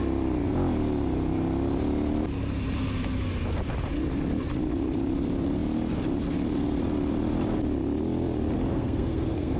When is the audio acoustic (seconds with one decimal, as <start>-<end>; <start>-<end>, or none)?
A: 0.0-8.7